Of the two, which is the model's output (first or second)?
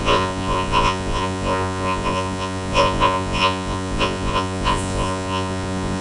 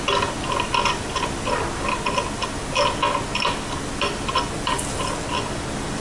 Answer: first